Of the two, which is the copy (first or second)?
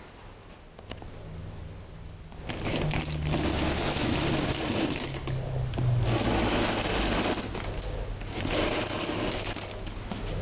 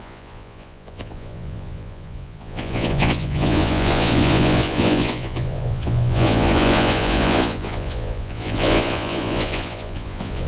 second